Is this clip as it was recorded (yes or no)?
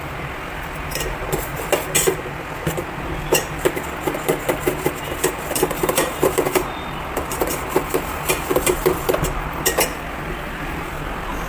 no